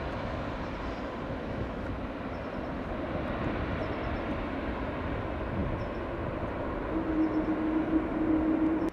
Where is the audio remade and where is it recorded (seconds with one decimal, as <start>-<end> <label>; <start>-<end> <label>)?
0.0-1.4 recorded; 1.4-1.9 remade; 1.9-8.9 recorded